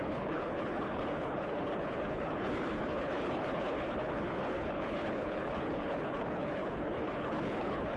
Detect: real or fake fake